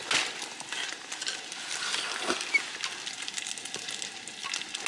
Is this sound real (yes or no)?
yes